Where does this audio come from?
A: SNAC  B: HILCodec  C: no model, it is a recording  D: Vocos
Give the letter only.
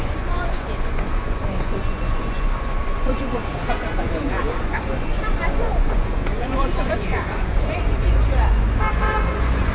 D